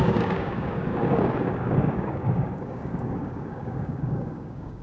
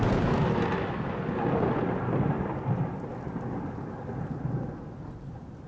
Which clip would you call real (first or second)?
second